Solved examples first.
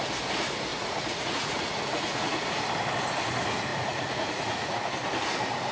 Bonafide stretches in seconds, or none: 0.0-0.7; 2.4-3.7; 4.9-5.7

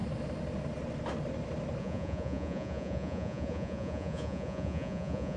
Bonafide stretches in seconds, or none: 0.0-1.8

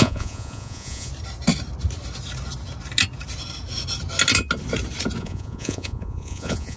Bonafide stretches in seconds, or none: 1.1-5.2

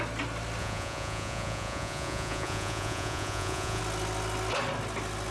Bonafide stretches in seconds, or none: 0.0-0.6; 3.8-5.3